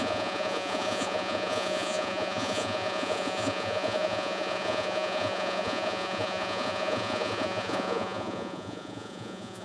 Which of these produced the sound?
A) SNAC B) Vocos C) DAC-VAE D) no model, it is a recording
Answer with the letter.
B